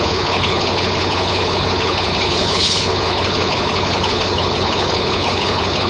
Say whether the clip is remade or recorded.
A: remade